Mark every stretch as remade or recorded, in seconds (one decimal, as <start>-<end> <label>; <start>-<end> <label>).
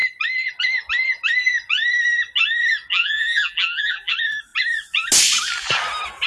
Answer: 0.0-2.9 recorded; 2.9-4.1 remade; 4.1-6.3 recorded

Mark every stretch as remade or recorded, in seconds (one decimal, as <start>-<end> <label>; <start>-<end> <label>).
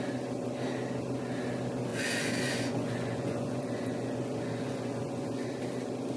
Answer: 0.0-1.9 recorded; 1.9-5.5 remade; 5.5-6.2 recorded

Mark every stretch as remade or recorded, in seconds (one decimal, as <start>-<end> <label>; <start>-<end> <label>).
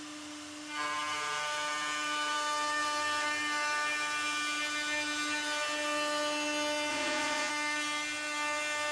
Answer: 0.0-6.9 recorded; 6.9-7.5 remade; 7.5-8.9 recorded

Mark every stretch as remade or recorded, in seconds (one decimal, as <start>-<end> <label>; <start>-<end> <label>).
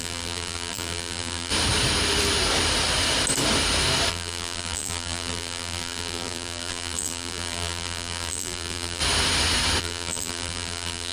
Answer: 0.0-1.5 remade; 1.5-4.1 recorded; 4.1-9.0 remade; 9.0-9.8 recorded; 9.8-11.1 remade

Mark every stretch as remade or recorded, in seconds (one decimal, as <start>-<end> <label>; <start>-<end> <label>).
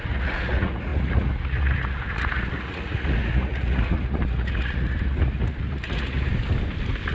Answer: 0.0-6.3 remade; 6.3-7.1 recorded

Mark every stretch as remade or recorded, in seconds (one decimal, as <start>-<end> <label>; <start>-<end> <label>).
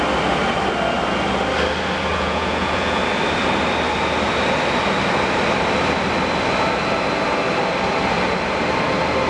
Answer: 0.0-2.1 recorded; 2.1-3.0 remade; 3.0-9.3 recorded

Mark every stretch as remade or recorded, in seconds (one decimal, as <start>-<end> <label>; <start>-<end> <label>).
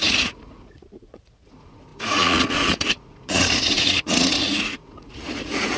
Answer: 0.0-5.8 remade